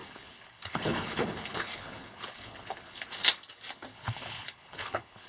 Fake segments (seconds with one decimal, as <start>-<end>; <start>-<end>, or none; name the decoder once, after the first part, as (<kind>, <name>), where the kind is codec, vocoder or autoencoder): 0.0-3.1 (codec, HILCodec); 3.9-5.3